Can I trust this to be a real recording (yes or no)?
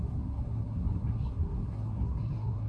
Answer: no